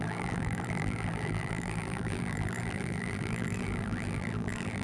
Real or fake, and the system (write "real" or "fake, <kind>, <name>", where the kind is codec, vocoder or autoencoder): fake, vocoder, BigVGAN v2